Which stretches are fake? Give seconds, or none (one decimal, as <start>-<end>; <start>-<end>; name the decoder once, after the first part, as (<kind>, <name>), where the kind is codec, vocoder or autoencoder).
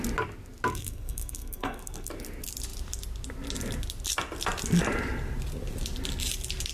0.7-2.1 (codec, SNAC)